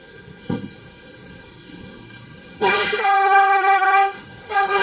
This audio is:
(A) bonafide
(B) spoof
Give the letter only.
B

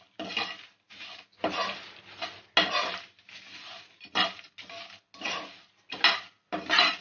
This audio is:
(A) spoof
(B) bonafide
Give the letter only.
B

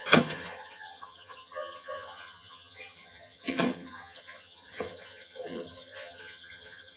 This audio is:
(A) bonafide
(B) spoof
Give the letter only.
B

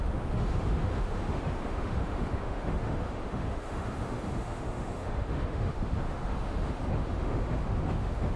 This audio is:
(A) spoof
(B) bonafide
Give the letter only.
A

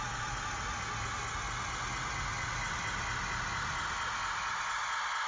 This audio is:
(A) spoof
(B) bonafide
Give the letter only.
B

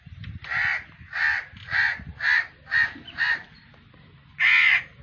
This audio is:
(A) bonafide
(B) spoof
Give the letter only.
A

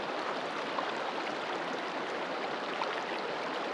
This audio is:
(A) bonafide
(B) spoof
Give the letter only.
A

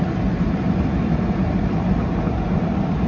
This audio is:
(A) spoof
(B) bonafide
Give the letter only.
A